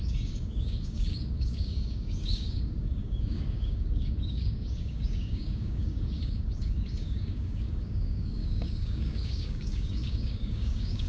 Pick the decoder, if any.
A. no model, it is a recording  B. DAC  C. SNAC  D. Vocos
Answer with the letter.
B